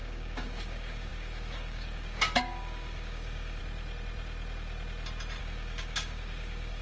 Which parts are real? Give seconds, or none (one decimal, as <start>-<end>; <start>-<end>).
3.6-5.4